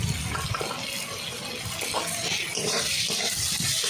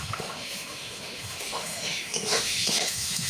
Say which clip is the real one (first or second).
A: first